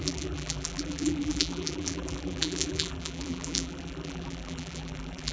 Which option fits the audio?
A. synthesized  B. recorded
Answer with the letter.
A